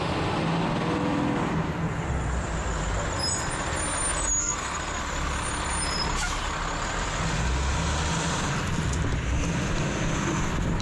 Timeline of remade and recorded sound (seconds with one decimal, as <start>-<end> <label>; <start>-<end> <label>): 0.0-4.4 recorded; 4.4-5.0 remade; 5.0-10.8 recorded